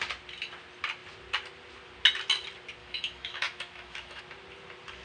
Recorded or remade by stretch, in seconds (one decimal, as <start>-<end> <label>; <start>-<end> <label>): 0.0-2.8 recorded; 2.8-4.2 remade; 4.2-5.0 recorded